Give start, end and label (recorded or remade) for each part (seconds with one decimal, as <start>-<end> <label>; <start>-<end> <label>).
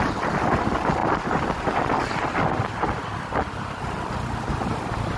0.0-5.2 recorded